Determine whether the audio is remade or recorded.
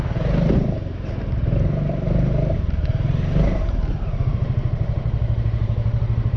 remade